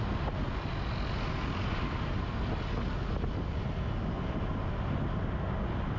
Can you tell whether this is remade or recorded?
recorded